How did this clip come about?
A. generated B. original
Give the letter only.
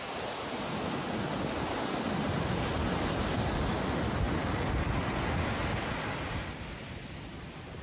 B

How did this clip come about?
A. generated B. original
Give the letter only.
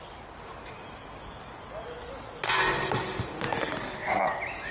B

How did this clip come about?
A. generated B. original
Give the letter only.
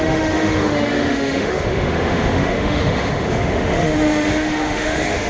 A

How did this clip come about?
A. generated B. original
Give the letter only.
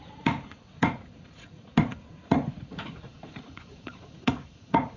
A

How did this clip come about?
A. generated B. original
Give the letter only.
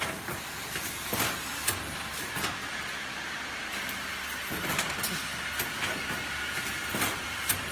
B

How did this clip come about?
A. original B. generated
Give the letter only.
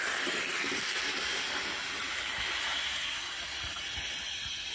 A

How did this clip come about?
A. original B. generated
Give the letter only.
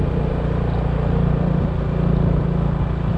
A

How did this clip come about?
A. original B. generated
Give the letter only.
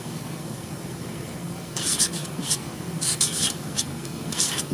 B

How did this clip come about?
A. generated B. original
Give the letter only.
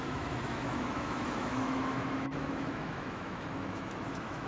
A